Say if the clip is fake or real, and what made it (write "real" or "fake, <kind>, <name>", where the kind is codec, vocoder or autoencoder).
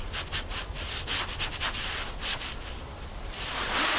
fake, vocoder, BigVGAN v2